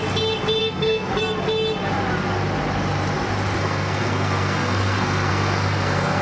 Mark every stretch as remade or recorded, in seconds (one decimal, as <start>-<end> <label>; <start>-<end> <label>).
0.0-0.6 recorded; 0.6-1.2 remade; 1.2-3.6 recorded; 3.6-6.2 remade